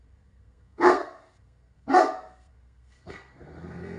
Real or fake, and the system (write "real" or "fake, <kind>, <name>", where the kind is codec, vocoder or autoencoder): fake, codec, SNAC